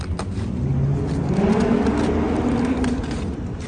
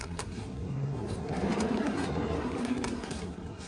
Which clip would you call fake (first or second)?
second